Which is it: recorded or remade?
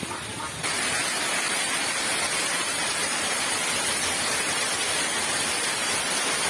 recorded